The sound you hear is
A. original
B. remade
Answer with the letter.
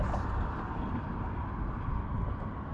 A